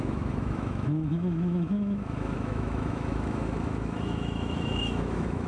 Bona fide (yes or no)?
no